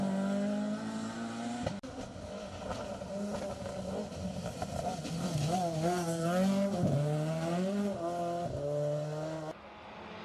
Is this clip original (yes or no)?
yes